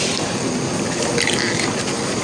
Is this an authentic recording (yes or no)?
yes